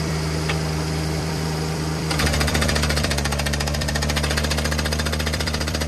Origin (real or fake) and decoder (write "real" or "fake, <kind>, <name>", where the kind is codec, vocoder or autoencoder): fake, vocoder, BigVGAN v2